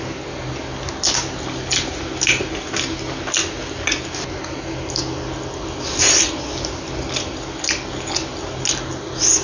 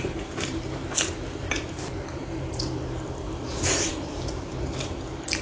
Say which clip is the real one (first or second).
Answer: first